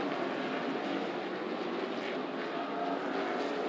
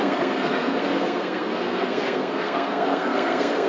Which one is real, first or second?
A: first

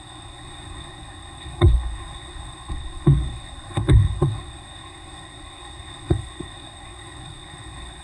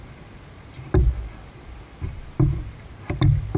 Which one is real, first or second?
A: second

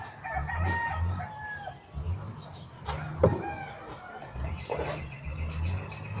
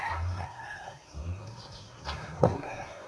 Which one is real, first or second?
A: first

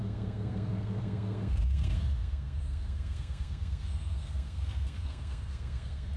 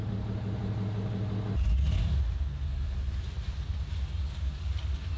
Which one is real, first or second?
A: second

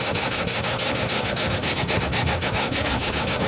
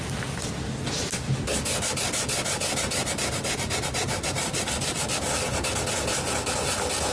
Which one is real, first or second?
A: second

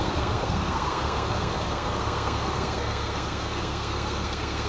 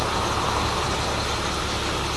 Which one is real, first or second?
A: second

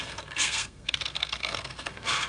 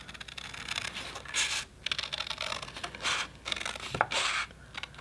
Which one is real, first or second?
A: second